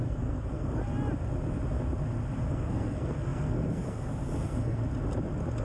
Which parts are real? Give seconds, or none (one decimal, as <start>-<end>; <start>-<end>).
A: 0.8-2.5; 4.8-5.6